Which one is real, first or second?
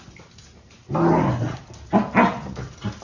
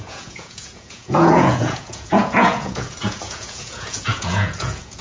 first